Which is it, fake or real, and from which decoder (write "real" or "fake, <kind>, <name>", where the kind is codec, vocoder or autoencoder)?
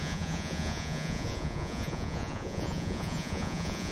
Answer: fake, vocoder, Vocos